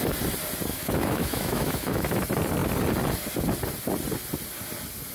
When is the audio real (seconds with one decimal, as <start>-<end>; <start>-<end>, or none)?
0.0-0.7; 2.2-5.1

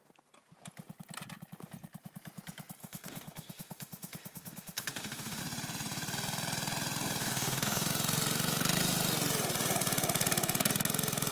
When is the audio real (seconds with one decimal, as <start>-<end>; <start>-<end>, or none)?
0.0-2.8; 5.4-7.2; 7.9-11.3

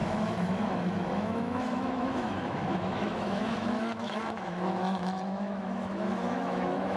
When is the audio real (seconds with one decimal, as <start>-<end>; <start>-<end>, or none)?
none

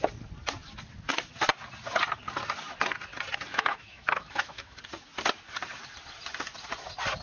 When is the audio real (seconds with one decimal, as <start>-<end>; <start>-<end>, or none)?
0.0-3.5; 4.8-7.2

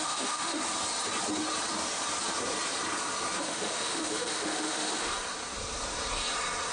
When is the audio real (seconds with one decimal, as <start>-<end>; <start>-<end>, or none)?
0.6-3.4; 5.1-6.7

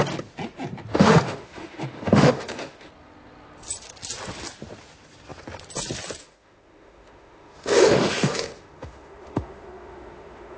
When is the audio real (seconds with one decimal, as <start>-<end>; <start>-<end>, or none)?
0.0-0.9; 2.9-6.2